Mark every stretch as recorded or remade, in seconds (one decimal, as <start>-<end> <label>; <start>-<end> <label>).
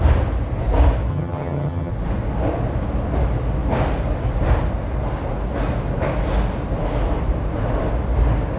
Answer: 0.0-1.1 recorded; 1.1-1.9 remade; 1.9-8.6 recorded